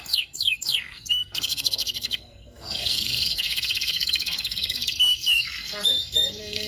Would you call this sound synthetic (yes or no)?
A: yes